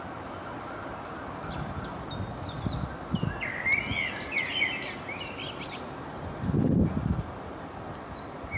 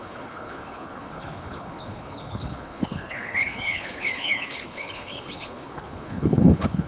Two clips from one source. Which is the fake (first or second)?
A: second